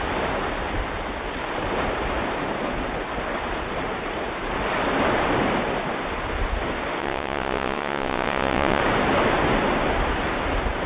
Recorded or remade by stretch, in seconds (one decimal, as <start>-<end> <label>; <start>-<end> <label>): 0.0-7.0 recorded; 7.0-8.8 remade; 8.8-10.9 recorded